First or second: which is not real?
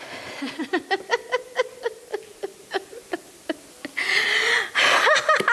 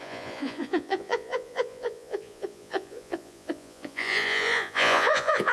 second